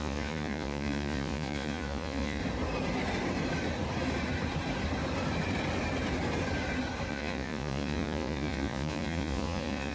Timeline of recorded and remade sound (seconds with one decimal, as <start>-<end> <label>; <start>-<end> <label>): 0.0-2.4 remade; 2.4-7.1 recorded; 7.1-9.9 remade